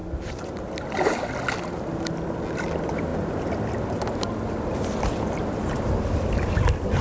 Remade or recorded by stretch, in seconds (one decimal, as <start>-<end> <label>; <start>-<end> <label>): 0.0-7.0 recorded